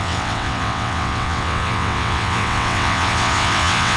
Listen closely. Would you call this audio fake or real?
fake